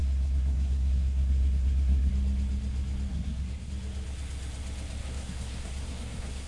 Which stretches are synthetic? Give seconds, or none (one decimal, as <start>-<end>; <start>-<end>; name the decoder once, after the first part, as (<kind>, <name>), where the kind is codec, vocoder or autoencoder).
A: 0.0-2.1 (codec, SNAC); 3.1-3.7; 5.0-6.5